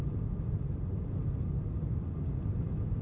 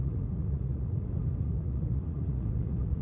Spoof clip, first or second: second